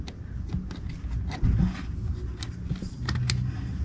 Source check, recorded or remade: recorded